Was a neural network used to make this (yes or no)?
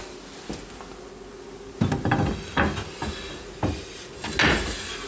no